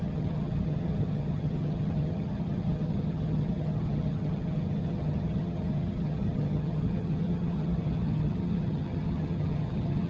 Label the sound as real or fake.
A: fake